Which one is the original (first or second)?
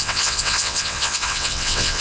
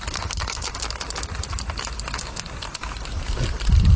second